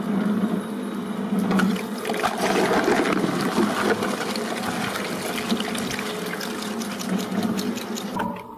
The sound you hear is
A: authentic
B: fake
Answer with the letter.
A